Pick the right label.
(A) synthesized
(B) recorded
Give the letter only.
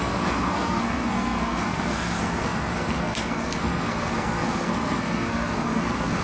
A